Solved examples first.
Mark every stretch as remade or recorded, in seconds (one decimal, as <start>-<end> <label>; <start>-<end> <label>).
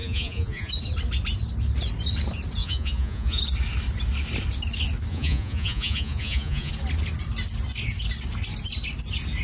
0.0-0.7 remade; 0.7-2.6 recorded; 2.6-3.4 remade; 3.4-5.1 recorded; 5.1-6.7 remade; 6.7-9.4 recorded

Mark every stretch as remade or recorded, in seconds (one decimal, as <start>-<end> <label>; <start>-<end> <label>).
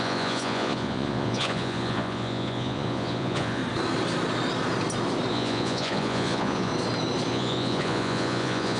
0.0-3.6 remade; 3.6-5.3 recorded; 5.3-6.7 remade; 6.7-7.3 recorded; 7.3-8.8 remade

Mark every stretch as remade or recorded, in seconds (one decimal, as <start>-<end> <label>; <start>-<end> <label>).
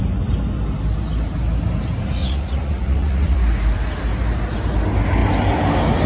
0.0-2.2 recorded; 2.2-3.4 remade; 3.4-6.1 recorded